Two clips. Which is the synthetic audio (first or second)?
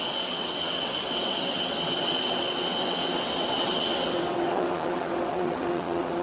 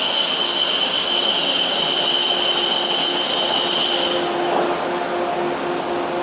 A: first